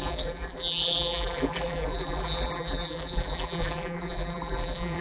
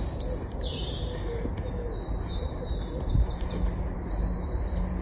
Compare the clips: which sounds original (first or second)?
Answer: second